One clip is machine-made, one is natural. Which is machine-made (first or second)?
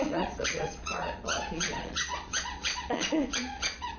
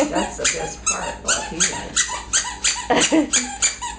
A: first